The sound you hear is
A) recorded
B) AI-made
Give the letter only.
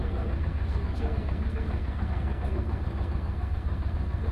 B